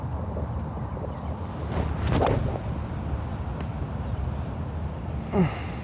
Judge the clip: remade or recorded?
recorded